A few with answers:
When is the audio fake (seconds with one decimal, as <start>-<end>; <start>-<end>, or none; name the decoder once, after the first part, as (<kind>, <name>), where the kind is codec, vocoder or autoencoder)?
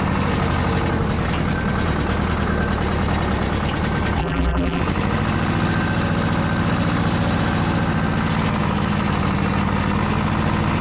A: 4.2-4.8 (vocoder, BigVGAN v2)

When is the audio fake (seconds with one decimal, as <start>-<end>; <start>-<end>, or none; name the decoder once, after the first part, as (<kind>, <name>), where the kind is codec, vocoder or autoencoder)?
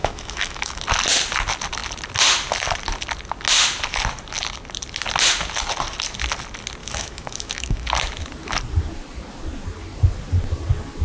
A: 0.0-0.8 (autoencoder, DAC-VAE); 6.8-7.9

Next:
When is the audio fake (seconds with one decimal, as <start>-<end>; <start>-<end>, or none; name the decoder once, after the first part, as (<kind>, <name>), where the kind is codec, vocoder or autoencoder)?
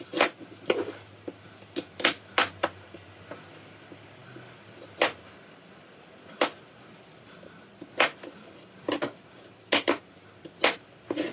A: none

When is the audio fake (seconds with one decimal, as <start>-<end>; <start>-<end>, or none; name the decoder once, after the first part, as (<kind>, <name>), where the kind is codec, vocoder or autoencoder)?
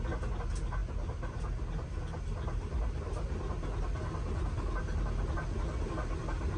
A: none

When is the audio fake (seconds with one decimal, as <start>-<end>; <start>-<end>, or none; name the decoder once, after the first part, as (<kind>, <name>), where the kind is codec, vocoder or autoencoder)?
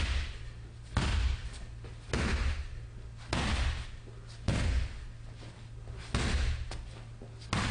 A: none